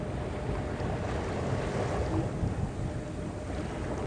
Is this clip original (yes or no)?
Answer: yes